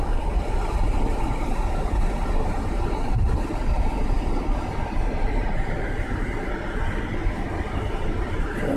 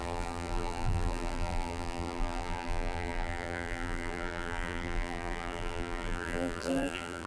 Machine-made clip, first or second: second